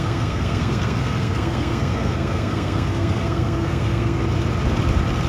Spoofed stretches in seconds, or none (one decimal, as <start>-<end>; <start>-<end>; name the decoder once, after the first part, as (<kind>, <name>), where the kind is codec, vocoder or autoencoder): 0.0-4.2 (codec, SNAC)

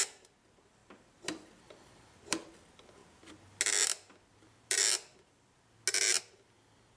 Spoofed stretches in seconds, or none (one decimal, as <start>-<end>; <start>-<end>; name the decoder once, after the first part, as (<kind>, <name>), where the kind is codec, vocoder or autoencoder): none